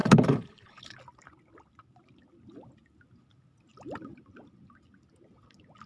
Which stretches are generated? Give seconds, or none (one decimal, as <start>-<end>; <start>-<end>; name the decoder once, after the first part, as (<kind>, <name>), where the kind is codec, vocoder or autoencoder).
0.0-1.0 (codec, HILCodec)